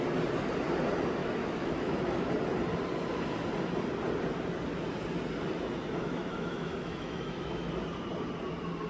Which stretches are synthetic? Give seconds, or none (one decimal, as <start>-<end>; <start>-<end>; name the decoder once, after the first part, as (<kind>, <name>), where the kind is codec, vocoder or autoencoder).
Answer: 1.2-2.3 (autoencoder, DAC-VAE); 6.0-7.7